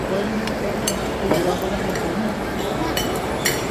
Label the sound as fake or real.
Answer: fake